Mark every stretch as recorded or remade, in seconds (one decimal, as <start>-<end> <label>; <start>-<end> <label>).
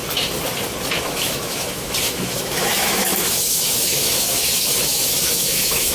0.0-1.0 recorded; 1.0-5.9 remade